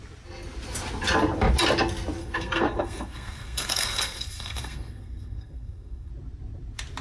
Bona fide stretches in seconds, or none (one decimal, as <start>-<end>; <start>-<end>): 0.0-2.2; 6.1-7.0